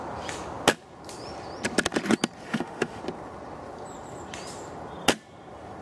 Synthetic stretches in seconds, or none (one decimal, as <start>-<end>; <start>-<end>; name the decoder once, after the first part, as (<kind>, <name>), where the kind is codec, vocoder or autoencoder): 2.5-3.0 (autoencoder, DAC-VAE)